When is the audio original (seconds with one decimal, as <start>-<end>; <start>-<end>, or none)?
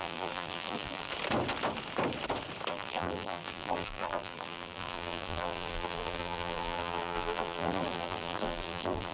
1.1-2.7